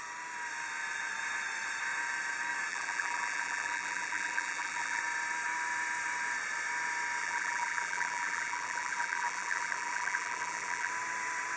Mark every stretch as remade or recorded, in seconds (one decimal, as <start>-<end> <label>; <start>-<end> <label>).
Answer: 0.0-2.7 recorded; 2.7-5.0 remade; 5.0-7.2 recorded; 7.2-10.9 remade; 10.9-11.6 recorded